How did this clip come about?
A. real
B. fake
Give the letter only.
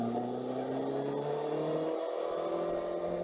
A